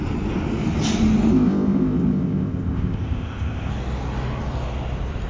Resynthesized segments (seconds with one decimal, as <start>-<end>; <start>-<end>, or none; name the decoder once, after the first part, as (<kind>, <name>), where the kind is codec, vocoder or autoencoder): 1.3-3.7 (codec, ZipCodec)